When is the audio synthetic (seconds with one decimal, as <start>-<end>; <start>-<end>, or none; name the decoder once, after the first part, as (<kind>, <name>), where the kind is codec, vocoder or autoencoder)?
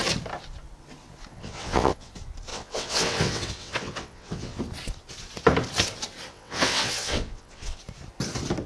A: 1.3-2.1 (vocoder, WaveNeXt); 2.5-4.6; 6.3-7.8